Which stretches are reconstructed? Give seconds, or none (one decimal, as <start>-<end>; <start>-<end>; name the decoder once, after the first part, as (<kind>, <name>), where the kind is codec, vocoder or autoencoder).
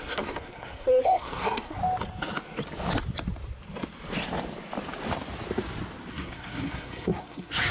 0.0-1.8 (codec, SNAC); 6.1-7.7